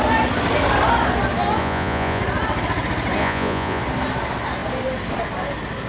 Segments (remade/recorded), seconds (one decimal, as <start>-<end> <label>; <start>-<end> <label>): 0.0-1.6 recorded; 1.6-2.2 remade; 2.2-3.2 recorded; 3.2-3.8 remade; 3.8-5.9 recorded